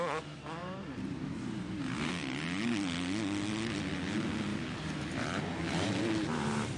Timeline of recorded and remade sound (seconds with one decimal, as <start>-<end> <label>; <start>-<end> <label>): 0.0-0.6 recorded; 0.6-2.1 remade; 2.1-4.5 recorded; 4.5-6.8 remade